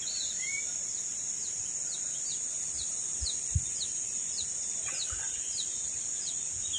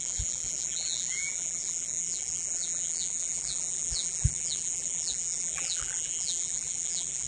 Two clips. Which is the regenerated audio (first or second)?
second